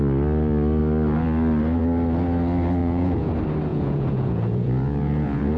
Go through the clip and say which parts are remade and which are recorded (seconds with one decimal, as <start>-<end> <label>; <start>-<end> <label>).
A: 0.0-2.8 recorded; 2.8-3.3 remade; 3.3-3.7 recorded; 3.7-5.6 remade